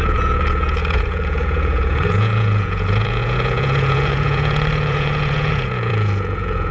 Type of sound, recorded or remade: remade